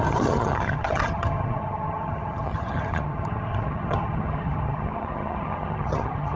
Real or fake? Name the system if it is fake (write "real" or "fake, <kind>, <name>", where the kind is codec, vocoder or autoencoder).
fake, vocoder, HiFi-GAN